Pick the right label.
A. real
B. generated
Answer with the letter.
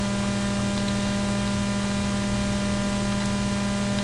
A